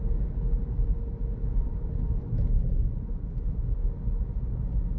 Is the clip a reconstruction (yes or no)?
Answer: no